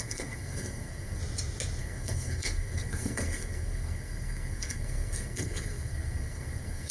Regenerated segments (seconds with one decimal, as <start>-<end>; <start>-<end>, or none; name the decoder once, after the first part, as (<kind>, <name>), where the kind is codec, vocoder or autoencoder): 0.0-1.2 (codec, SNAC); 1.8-6.9